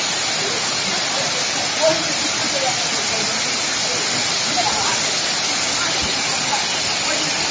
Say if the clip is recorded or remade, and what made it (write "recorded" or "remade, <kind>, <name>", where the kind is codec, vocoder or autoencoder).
recorded